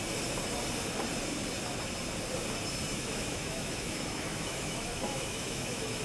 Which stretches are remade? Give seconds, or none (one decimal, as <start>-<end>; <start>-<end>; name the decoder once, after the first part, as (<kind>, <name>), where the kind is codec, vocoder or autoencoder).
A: 2.9-6.0 (autoencoder, DAC-VAE)